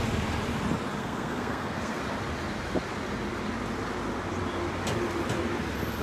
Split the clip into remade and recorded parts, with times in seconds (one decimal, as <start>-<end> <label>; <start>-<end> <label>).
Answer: 0.0-1.0 recorded; 1.0-2.0 remade; 2.0-6.0 recorded